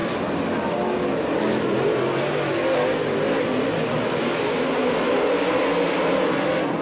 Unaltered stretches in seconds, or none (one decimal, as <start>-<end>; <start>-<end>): 0.0-6.8